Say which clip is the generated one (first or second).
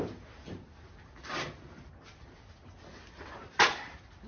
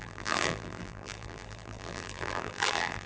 second